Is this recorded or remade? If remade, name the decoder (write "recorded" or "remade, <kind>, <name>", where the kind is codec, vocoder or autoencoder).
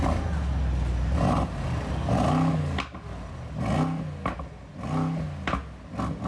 recorded